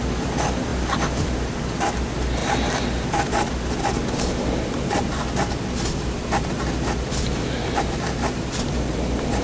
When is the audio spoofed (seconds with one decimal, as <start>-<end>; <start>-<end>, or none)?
none